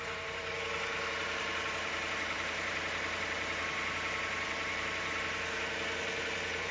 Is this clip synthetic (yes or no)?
yes